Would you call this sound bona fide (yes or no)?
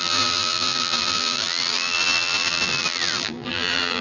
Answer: no